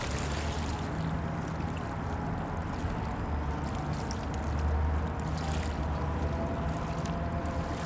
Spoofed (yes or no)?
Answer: no